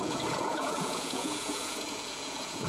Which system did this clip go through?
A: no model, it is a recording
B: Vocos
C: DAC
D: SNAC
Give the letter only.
B